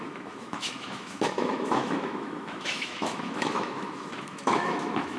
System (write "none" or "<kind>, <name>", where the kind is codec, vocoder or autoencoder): autoencoder, DAC-VAE